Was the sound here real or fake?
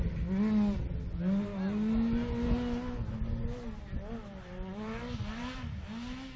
real